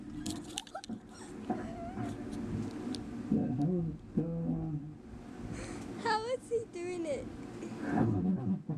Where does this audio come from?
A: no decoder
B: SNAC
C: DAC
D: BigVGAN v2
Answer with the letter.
A